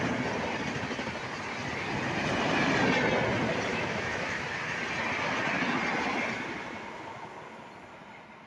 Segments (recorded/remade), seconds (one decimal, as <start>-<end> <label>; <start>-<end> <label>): 0.0-3.7 recorded; 3.7-4.5 remade; 4.5-8.5 recorded